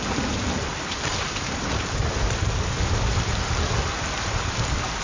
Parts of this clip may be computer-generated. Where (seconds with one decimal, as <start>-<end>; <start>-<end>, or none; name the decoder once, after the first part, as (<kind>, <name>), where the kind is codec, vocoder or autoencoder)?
0.7-3.7 (vocoder, BigVGAN v2)